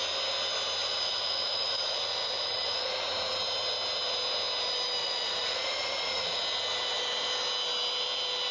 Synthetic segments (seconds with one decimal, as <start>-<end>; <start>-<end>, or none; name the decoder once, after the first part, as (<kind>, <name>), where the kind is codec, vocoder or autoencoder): 0.8-3.3 (vocoder, Vocos); 5.0-6.4